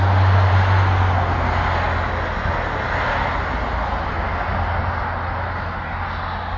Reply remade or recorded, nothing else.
recorded